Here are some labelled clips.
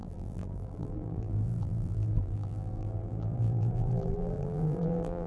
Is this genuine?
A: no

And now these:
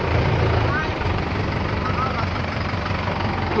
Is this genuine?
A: no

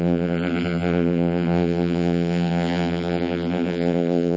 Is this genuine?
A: no